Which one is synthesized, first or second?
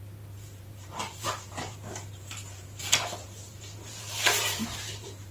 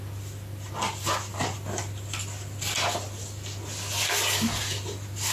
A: first